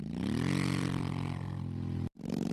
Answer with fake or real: real